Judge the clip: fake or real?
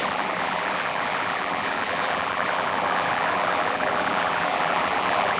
fake